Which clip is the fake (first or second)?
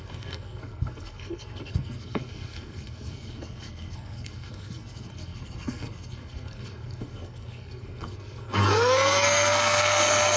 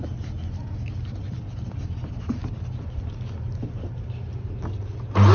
first